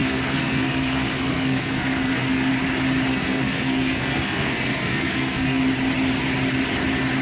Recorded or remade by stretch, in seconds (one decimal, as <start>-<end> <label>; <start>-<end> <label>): 0.0-2.5 remade; 2.5-3.1 recorded; 3.1-5.6 remade; 5.6-7.2 recorded